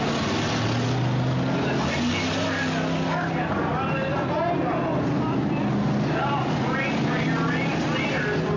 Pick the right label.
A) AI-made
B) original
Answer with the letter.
B